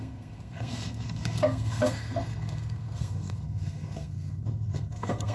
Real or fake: fake